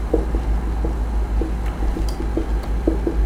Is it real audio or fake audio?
real